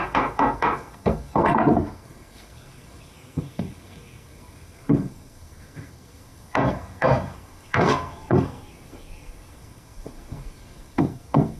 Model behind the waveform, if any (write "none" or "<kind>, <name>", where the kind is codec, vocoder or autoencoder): codec, SNAC